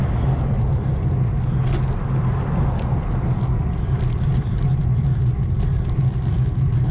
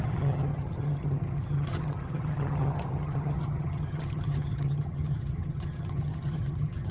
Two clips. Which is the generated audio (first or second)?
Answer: second